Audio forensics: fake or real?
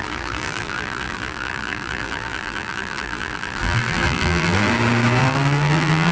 fake